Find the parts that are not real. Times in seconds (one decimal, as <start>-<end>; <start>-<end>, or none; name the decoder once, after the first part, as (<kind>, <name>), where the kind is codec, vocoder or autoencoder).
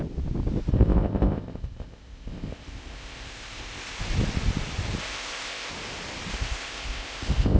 0.7-4.0 (codec, ZipCodec); 5.0-5.7; 6.3-7.6